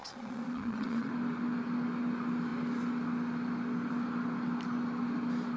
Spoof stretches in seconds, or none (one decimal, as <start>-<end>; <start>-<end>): 0.0-1.1